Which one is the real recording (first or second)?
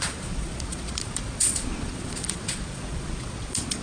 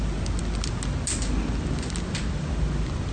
second